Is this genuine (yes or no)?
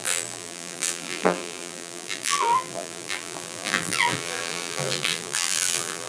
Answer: no